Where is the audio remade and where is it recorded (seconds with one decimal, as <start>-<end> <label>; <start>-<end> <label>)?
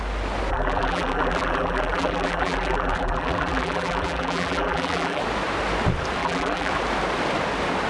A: 0.0-0.5 recorded; 0.5-5.2 remade; 5.2-6.2 recorded; 6.2-6.7 remade; 6.7-7.9 recorded